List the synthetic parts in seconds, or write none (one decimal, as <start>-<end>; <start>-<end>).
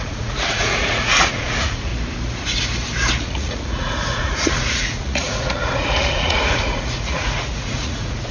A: 0.0-1.9; 3.2-8.3